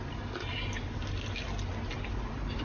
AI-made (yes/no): no